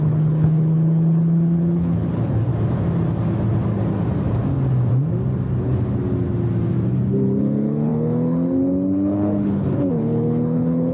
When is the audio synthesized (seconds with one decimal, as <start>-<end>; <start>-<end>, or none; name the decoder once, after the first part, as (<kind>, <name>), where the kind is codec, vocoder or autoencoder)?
0.0-2.5 (codec, HILCodec); 5.6-6.0; 6.9-10.9

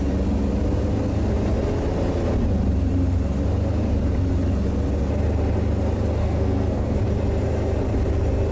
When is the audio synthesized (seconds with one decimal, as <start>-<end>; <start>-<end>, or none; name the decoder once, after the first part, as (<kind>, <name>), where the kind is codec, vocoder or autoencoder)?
6.2-7.0 (codec, SNAC)

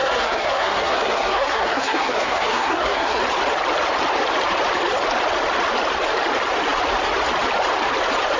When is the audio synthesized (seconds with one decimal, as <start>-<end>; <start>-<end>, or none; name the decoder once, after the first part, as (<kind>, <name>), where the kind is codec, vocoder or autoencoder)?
0.0-3.2 (codec, SNAC)

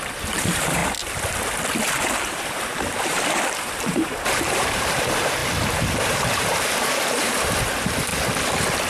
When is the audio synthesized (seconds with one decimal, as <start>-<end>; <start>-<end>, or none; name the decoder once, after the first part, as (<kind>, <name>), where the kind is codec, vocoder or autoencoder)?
0.0-0.8 (vocoder, BigVGAN v2); 2.0-5.4; 6.0-8.1

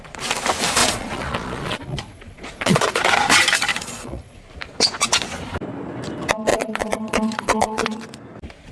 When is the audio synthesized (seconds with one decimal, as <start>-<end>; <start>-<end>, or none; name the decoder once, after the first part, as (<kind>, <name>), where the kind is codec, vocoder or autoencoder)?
0.8-3.0 (vocoder, Vocos); 3.7-4.4; 6.5-8.0

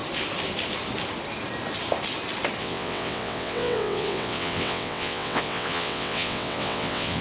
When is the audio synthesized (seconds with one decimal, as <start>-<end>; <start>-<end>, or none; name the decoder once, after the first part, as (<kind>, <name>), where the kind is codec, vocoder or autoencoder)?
2.6-7.2 (vocoder, WaveNeXt)

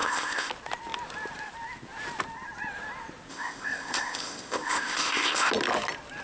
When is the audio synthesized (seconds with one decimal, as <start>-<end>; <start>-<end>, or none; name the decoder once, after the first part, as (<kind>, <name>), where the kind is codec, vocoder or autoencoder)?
0.0-0.5 (codec, ZipCodec); 3.3-5.5

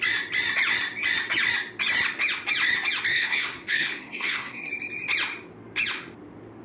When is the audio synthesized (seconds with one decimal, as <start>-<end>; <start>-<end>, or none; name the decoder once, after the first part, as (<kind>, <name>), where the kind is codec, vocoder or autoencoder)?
3.1-4.7 (codec, SNAC)